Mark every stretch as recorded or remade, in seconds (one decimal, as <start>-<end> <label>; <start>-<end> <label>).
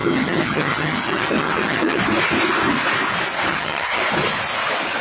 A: 0.0-2.0 remade; 2.0-3.5 recorded; 3.5-4.0 remade; 4.0-5.0 recorded